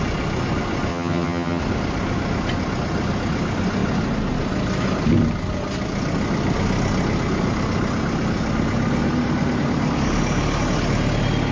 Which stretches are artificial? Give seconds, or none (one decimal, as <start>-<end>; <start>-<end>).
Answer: 0.9-1.6